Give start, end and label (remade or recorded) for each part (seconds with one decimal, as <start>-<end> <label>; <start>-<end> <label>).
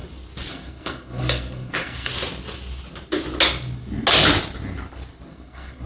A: 0.0-0.5 recorded; 0.5-2.1 remade; 2.1-5.3 recorded; 5.3-5.9 remade